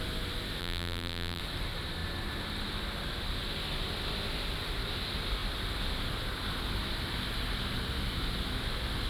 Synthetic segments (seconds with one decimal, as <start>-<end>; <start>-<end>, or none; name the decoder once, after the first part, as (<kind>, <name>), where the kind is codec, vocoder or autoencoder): 0.6-1.4 (vocoder, BigVGAN v2)

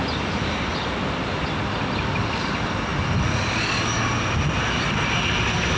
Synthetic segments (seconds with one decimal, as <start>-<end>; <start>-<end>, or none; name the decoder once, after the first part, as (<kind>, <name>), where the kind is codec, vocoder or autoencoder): none

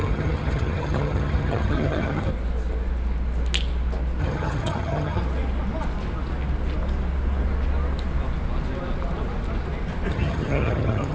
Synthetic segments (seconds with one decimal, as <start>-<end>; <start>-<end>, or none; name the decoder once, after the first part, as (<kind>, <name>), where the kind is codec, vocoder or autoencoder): 0.0-2.3 (vocoder, HiFi-GAN); 4.2-5.2; 10.1-11.1

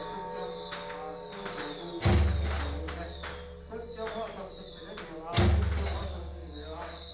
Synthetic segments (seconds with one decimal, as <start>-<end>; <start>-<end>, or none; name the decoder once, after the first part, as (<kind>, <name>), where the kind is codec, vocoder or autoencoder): 6.0-7.1 (codec, DAC)

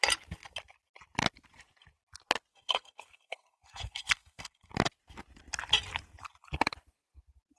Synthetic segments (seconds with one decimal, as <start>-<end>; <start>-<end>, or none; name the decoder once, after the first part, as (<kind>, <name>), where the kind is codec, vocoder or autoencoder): 2.5-4.7 (codec, SNAC)

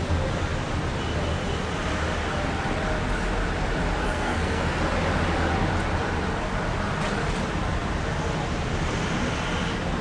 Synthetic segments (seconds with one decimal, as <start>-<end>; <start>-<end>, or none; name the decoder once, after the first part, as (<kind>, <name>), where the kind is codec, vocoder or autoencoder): 4.0-4.8 (codec, SNAC)

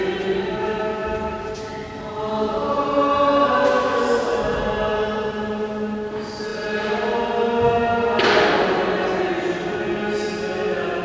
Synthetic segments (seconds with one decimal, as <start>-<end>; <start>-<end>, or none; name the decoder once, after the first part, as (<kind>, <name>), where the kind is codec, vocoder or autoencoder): none

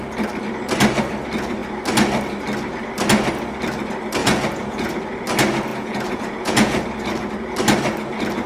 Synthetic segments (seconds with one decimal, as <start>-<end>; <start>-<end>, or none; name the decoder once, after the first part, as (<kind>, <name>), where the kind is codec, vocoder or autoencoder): 4.2-5.0 (vocoder, Vocos); 5.7-6.8